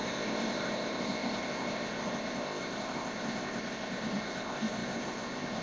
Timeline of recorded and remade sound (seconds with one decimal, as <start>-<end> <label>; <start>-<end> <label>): 0.0-5.6 remade